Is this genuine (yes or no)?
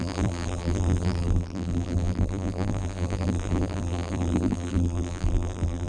no